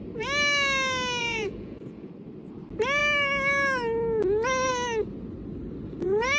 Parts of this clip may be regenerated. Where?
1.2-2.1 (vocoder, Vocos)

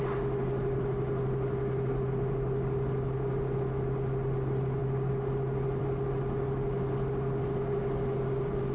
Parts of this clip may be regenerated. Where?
none

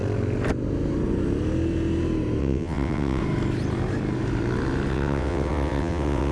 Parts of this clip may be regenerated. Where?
2.4-3.2 (vocoder, WaveNeXt); 4.9-6.3